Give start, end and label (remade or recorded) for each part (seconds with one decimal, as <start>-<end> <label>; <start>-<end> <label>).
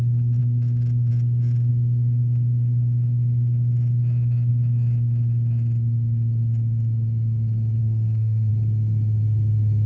0.0-7.8 recorded; 7.8-8.5 remade; 8.5-9.9 recorded